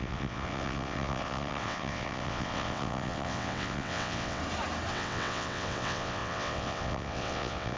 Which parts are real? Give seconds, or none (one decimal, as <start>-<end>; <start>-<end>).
4.4-4.9